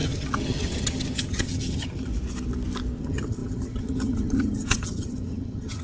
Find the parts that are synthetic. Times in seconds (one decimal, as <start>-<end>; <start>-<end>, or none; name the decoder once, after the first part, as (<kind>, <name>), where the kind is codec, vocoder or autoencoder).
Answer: 0.0-2.1 (vocoder, HiFi-GAN); 3.0-5.8